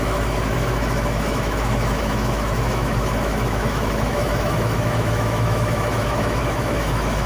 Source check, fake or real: fake